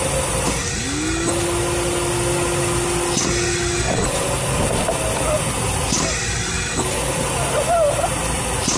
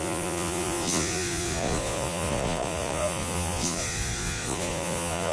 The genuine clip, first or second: first